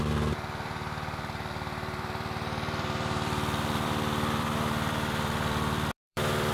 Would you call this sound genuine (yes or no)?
no